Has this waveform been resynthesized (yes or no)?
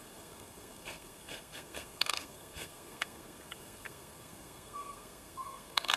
yes